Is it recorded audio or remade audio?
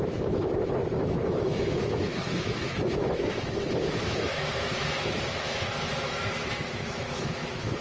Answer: remade